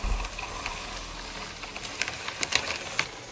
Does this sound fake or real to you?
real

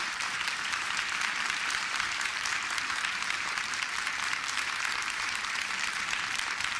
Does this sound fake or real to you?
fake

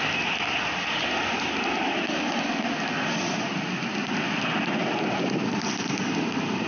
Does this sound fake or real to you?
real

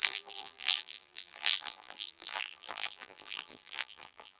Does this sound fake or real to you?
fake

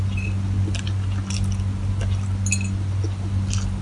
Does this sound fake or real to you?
real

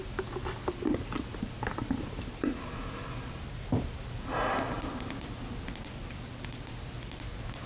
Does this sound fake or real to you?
real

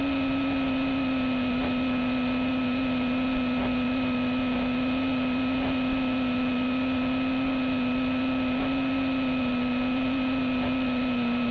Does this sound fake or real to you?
real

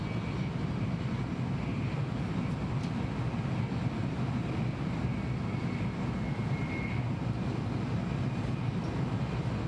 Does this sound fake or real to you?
real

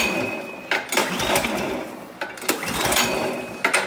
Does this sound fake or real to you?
real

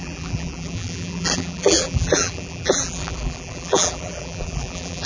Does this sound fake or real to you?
fake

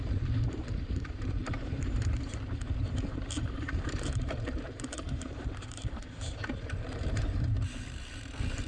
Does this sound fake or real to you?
fake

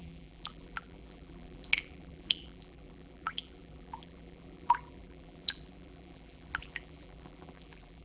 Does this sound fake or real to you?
fake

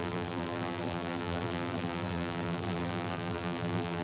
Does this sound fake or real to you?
fake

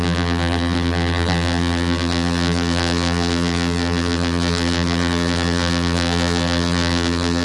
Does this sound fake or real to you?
fake